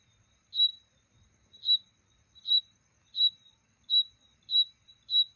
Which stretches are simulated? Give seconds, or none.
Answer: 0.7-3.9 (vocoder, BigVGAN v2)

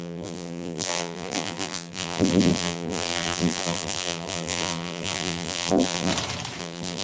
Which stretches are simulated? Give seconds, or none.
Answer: 0.0-6.1 (vocoder, BigVGAN v2); 6.6-7.0